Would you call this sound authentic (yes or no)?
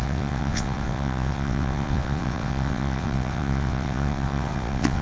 no